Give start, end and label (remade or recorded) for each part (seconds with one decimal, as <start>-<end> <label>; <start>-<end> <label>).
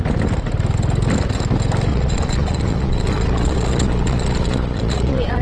0.0-1.9 recorded; 1.9-5.4 remade